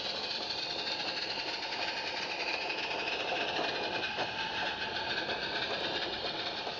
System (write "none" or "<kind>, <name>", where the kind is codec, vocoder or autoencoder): vocoder, BigVGAN v2